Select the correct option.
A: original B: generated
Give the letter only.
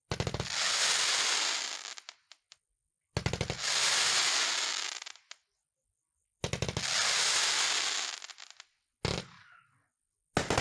A